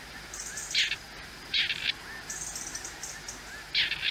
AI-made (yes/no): no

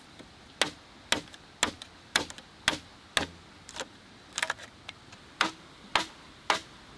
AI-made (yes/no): no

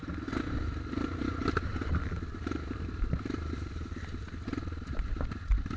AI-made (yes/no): no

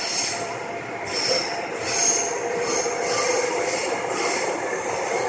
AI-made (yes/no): no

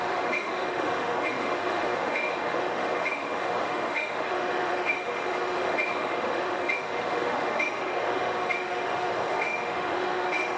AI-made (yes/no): yes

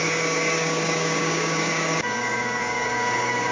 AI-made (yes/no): yes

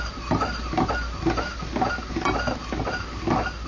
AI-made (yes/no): no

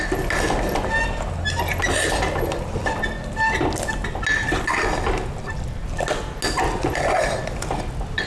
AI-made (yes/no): no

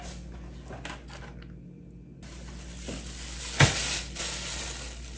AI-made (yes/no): no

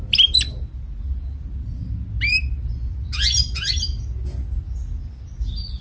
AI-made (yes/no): no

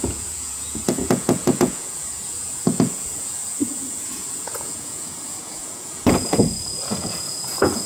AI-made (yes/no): yes